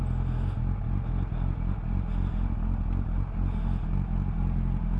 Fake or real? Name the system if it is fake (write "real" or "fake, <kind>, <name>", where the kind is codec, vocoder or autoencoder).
real